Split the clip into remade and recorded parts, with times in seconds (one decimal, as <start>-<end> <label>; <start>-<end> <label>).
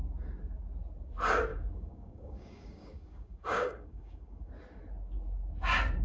0.0-1.5 recorded; 1.5-4.5 remade; 4.5-6.0 recorded